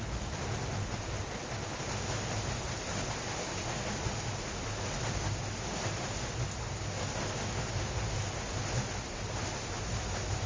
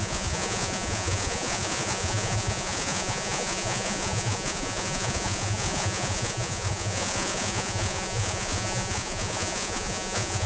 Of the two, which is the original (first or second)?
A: first